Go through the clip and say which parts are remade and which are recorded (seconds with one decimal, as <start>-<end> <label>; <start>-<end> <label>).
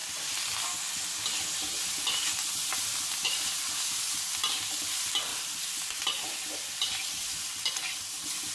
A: 0.0-0.5 remade; 0.5-5.3 recorded; 5.3-7.2 remade; 7.2-8.5 recorded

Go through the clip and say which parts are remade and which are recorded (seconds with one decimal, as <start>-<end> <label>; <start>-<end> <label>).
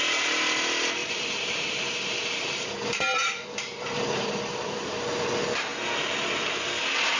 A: 0.0-1.0 recorded; 1.0-5.0 remade; 5.0-7.2 recorded